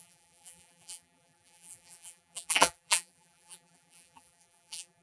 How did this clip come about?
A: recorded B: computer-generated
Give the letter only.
B